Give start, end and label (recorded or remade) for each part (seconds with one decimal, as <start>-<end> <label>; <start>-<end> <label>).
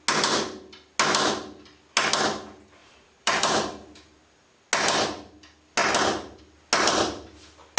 0.0-2.8 recorded; 2.8-4.6 remade; 4.6-5.8 recorded; 5.8-6.4 remade; 6.4-7.8 recorded